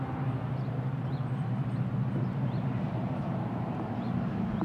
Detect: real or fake fake